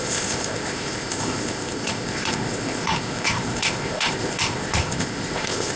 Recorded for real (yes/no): no